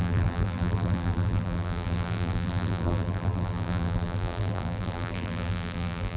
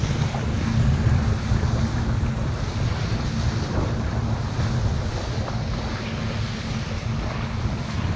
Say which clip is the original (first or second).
second